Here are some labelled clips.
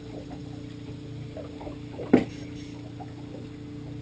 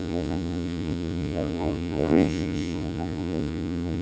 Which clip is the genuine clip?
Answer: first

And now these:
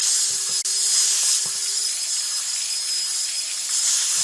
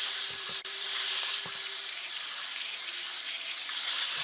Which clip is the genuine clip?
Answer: first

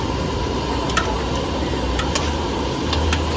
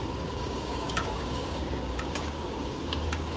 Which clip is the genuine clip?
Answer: first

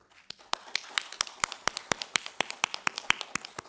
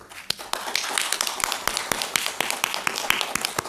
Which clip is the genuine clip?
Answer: second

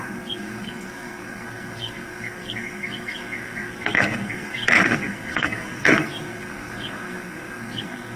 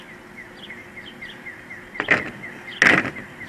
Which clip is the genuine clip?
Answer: second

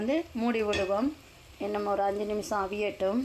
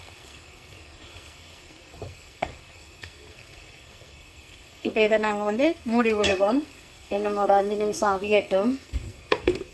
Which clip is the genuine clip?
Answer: first